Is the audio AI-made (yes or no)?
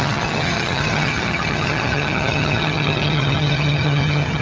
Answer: yes